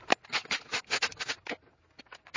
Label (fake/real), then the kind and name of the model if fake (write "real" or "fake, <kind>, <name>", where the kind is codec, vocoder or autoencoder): real